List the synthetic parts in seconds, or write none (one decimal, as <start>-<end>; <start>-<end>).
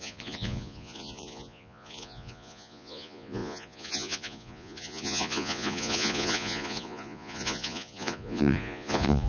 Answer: 0.0-9.3